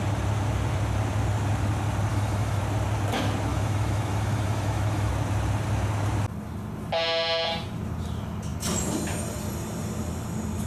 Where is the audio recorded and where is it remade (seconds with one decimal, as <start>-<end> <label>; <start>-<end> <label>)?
0.0-2.1 recorded; 2.1-2.6 remade; 2.6-3.5 recorded; 3.5-5.1 remade; 5.1-10.7 recorded